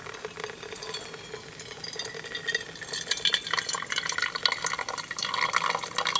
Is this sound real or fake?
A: real